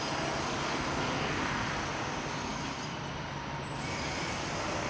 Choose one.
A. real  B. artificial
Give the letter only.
A